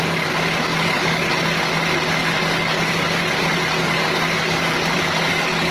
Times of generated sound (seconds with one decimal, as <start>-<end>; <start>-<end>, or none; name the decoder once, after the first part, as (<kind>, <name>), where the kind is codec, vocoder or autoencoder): 0.7-1.3 (codec, DAC); 2.2-3.2; 3.8-5.7